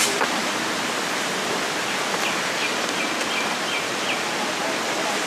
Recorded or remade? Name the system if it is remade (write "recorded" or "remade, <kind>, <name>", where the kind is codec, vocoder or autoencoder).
recorded